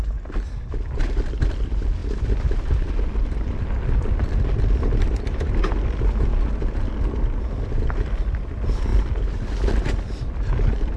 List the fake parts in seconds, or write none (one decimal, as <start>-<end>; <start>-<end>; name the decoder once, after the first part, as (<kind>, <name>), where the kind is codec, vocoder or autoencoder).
none